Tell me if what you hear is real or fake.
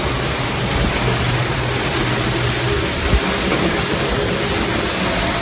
real